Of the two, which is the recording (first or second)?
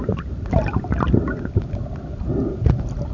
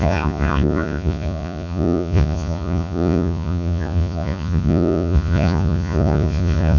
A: first